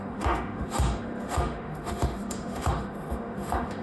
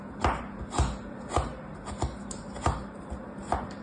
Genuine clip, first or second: second